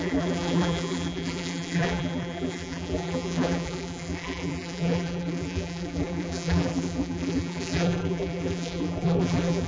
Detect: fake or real fake